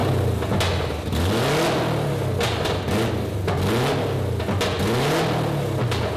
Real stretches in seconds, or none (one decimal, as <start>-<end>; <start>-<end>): 0.0-6.2